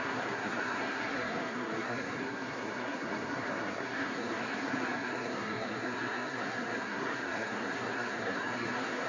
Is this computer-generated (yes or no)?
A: yes